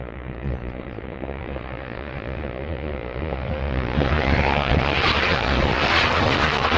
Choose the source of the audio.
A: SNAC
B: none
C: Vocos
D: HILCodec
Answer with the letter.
C